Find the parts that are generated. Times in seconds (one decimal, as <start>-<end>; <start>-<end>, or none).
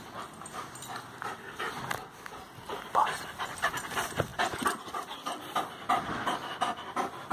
none